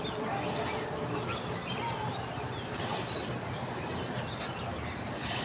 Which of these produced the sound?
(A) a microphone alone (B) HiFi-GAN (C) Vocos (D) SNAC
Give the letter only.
A